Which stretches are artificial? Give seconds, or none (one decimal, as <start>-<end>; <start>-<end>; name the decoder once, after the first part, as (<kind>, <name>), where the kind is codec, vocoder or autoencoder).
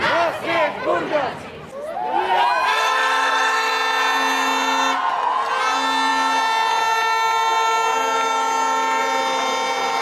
2.7-3.7 (autoencoder, DAC-VAE)